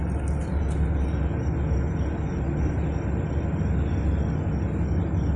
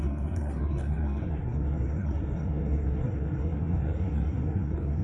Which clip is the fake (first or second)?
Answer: second